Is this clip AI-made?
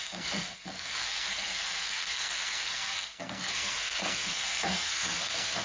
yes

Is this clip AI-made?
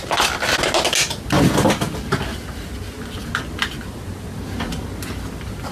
no